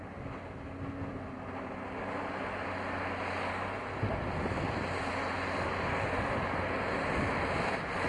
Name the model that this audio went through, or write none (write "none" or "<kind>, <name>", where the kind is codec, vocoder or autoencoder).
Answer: none